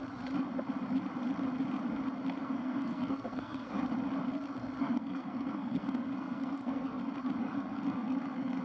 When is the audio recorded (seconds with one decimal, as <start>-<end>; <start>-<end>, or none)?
0.0-2.4; 3.8-4.8; 7.0-7.4

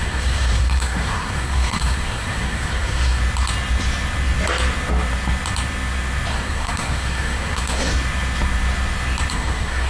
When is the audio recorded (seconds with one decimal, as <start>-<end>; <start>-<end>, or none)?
3.2-6.3; 7.9-9.3